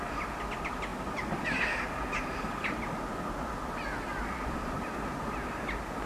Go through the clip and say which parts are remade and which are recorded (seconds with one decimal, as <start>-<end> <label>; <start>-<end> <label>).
0.0-6.0 recorded

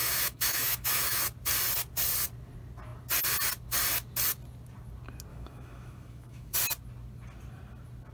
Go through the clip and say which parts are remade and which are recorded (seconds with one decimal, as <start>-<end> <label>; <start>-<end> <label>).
0.0-1.2 remade; 1.2-5.3 recorded; 5.3-6.5 remade; 6.5-8.1 recorded

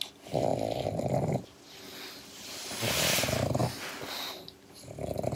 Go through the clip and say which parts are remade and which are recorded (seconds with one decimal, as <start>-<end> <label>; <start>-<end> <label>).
0.0-5.4 recorded